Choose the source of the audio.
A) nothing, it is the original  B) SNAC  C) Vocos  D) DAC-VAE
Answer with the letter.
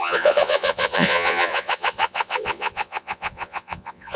C